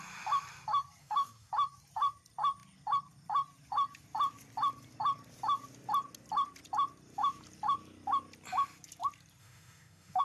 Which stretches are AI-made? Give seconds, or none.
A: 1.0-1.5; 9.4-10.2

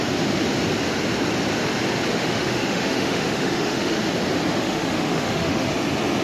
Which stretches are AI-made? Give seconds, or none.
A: 2.1-4.0; 4.5-5.7

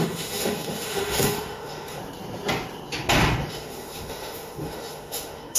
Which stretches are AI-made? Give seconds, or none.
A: 0.0-2.0; 3.5-5.6

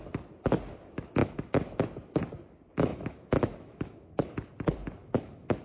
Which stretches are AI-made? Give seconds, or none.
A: 2.9-4.1; 5.0-5.6

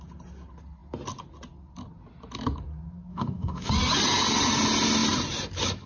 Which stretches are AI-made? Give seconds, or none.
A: 3.1-3.7

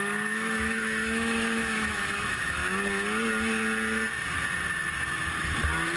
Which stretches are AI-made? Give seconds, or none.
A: 0.0-2.6